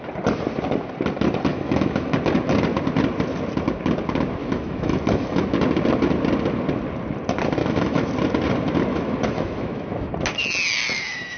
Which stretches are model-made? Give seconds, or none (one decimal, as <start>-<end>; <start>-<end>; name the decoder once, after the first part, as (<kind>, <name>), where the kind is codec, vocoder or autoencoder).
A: 1.5-2.1 (autoencoder, DAC-VAE); 4.4-5.4; 7.6-8.1; 8.9-10.1